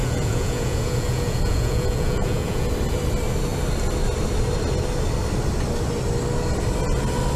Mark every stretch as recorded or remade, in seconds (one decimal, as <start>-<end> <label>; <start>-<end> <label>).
0.0-2.7 remade; 2.7-7.4 recorded